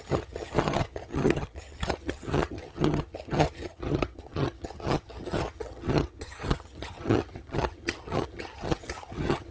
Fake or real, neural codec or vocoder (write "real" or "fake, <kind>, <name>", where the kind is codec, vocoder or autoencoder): fake, vocoder, HiFi-GAN